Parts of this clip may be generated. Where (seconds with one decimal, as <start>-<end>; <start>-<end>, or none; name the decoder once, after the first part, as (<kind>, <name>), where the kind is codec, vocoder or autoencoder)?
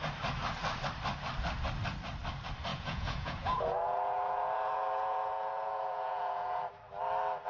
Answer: 2.7-6.7 (vocoder, Vocos)